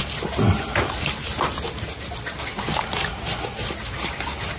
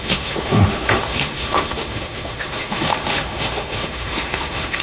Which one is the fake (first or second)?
second